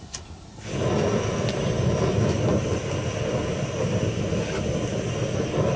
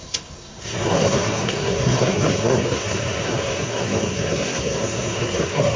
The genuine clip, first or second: first